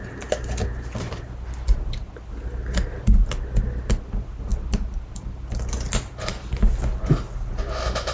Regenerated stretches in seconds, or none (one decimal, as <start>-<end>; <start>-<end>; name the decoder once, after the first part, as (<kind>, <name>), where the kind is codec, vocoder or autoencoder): none